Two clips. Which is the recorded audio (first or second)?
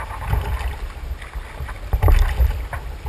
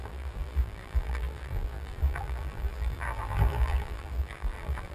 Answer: first